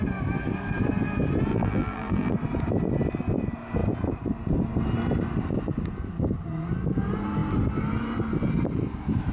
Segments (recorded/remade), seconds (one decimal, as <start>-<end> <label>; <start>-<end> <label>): 0.0-1.5 recorded; 1.5-2.3 remade; 2.3-9.3 recorded